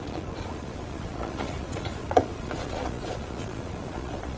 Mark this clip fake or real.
fake